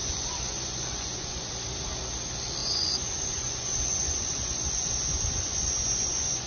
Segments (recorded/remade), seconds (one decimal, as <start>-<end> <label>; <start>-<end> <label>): 0.0-1.5 remade; 1.5-2.6 recorded; 2.6-6.5 remade